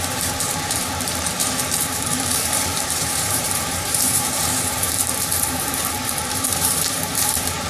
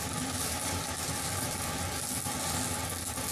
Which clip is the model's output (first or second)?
first